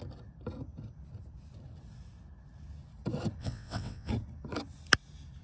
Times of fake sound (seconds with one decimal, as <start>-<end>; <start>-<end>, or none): 3.4-4.1